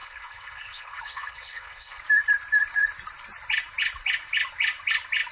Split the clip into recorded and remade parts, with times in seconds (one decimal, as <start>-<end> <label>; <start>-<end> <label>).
0.0-2.0 remade; 2.0-5.3 recorded